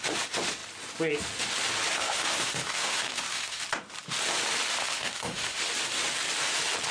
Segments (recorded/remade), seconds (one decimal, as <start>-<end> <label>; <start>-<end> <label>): 0.0-2.0 recorded; 2.0-3.6 remade; 3.6-4.8 recorded; 4.8-5.6 remade; 5.6-6.9 recorded